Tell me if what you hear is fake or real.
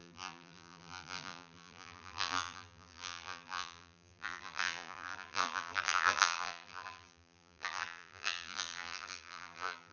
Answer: fake